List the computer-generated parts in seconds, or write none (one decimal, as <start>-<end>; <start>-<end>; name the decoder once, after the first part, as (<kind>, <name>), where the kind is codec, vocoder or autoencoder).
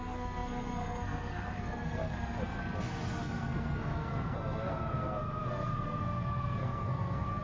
0.0-2.6 (codec, SNAC); 3.2-7.4